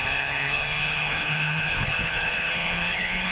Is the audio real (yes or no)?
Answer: no